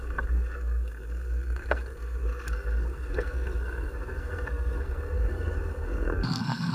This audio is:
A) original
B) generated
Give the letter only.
B